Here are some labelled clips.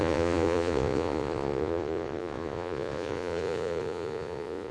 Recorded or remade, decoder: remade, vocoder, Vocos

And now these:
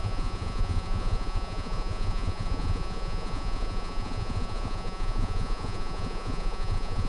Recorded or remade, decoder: remade, vocoder, Vocos